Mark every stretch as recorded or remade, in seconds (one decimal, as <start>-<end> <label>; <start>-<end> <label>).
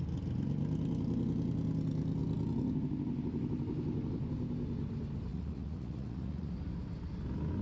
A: 0.0-5.3 recorded; 5.3-6.5 remade; 6.5-7.6 recorded